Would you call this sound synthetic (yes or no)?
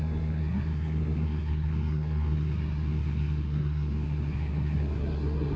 yes